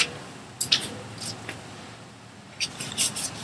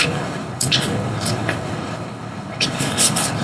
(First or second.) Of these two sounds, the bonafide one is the first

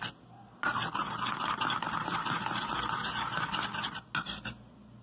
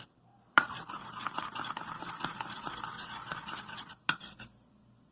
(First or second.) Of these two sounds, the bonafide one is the first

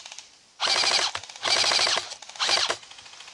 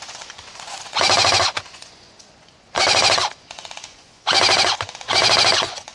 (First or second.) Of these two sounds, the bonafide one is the first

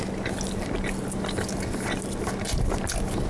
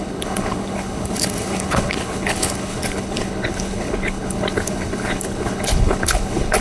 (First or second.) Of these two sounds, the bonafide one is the first